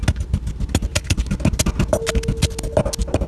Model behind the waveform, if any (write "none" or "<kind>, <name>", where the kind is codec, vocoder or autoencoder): none